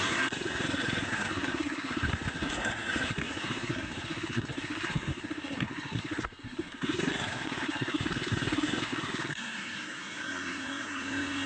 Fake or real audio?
fake